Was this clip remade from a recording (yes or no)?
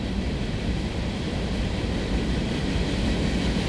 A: no